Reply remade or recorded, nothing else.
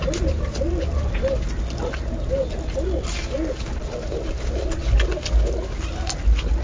recorded